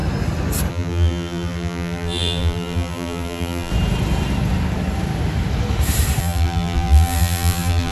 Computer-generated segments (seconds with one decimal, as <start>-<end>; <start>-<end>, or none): 0.7-3.7; 6.2-7.9